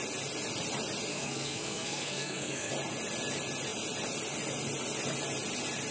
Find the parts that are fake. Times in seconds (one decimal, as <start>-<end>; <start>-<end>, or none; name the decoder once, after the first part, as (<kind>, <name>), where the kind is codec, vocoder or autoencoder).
1.1-2.7 (codec, SNAC)